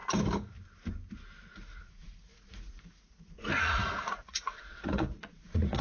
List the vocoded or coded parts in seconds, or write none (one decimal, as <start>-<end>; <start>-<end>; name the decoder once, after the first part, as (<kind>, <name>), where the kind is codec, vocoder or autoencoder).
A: 1.5-5.8 (vocoder, Vocos)